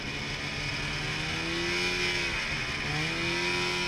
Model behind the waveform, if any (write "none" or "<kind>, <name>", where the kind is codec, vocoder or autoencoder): none